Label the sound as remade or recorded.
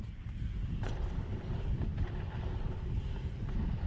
remade